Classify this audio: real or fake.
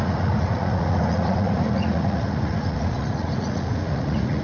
fake